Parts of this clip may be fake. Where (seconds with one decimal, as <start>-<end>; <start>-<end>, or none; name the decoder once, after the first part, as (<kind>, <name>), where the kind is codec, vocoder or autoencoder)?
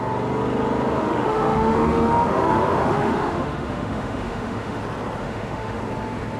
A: 1.0-4.8 (autoencoder, DAC-VAE); 5.2-5.8